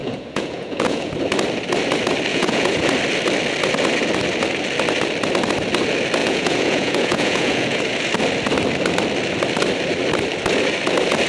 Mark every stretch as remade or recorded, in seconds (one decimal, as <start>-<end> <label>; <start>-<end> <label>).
0.0-1.1 remade; 1.1-2.3 recorded; 2.3-2.9 remade; 2.9-6.2 recorded; 6.2-7.8 remade; 7.8-11.3 recorded